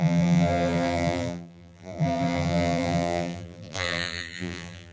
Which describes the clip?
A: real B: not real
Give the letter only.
B